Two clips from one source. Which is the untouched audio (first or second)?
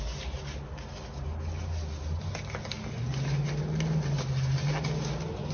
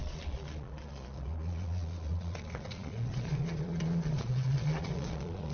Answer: first